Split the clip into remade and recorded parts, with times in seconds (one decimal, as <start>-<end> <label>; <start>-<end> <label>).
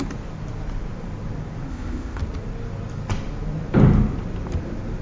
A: 0.0-1.7 recorded; 1.7-2.2 remade; 2.2-5.0 recorded